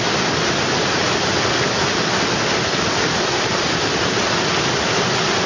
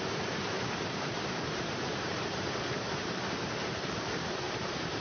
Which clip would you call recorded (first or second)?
first